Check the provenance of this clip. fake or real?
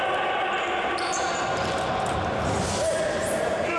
real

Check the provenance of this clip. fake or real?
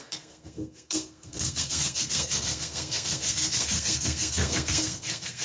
fake